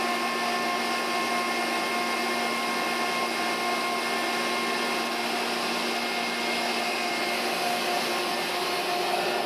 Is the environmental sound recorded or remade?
recorded